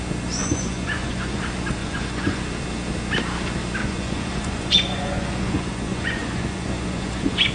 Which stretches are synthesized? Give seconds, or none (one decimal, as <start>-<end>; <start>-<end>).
0.4-1.4; 1.8-2.4; 3.8-7.5